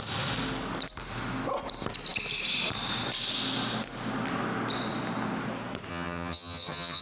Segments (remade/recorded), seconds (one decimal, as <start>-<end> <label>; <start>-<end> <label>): 0.0-5.9 recorded; 5.9-7.0 remade